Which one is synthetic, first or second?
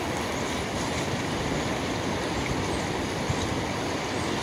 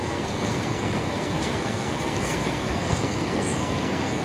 second